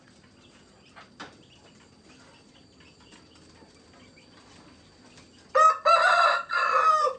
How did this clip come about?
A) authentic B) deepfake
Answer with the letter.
A